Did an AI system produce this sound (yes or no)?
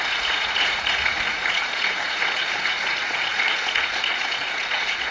yes